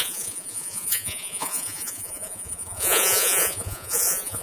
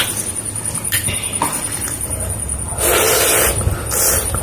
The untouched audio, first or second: second